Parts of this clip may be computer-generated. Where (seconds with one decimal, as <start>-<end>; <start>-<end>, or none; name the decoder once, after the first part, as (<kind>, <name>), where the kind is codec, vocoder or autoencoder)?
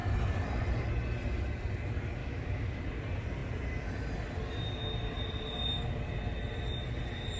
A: 2.2-2.8 (autoencoder, DAC-VAE)